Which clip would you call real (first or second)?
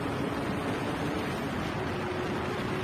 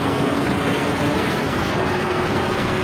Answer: first